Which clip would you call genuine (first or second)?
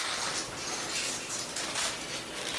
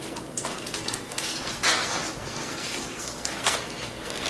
first